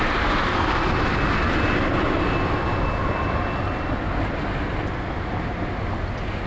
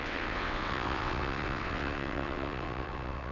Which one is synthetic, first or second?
second